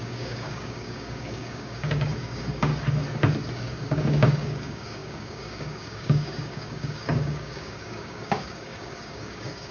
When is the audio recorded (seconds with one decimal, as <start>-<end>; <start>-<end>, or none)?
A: 2.7-3.5